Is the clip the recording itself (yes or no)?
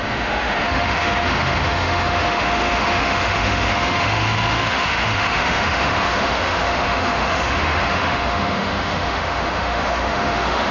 no